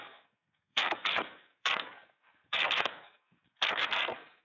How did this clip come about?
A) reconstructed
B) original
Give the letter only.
A